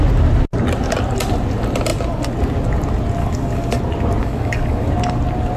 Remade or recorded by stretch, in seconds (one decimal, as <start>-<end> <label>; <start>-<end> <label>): 0.0-3.2 recorded; 3.2-3.8 remade; 3.8-4.2 recorded; 4.2-4.9 remade; 4.9-5.6 recorded